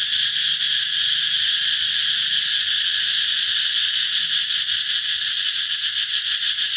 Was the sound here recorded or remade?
recorded